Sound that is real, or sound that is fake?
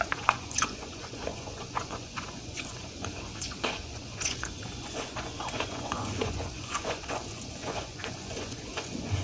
fake